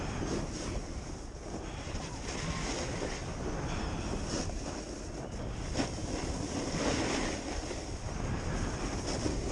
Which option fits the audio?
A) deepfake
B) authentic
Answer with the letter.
B